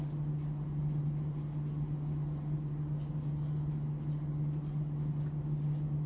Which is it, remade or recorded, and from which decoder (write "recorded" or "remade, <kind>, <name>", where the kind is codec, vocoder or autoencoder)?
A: recorded